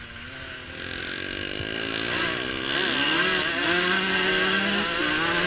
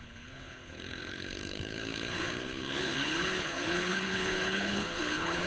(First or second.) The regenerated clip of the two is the second